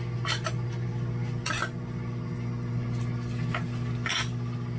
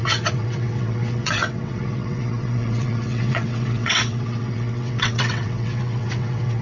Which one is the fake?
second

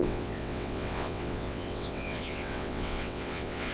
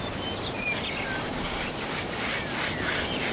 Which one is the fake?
first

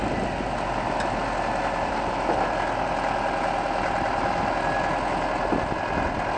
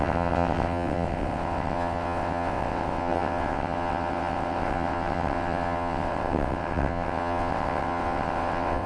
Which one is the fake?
second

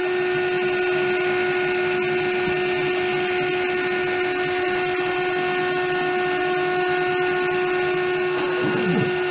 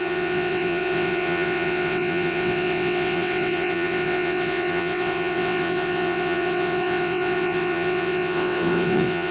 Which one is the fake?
second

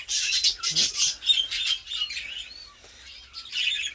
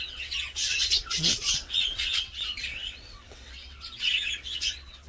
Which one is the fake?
second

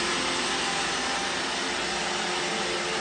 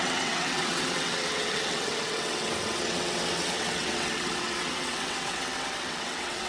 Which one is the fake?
second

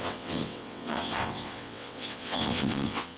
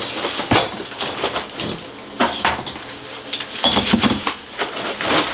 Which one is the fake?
first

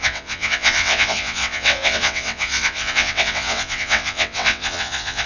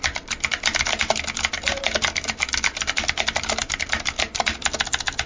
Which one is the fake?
first